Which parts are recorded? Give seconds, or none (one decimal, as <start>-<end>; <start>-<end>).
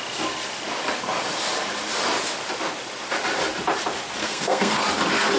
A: 0.0-4.2; 4.8-5.4